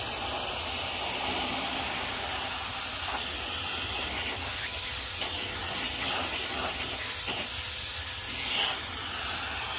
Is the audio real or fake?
real